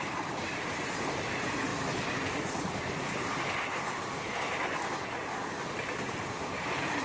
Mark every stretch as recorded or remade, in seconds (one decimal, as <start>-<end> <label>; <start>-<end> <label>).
0.0-7.0 recorded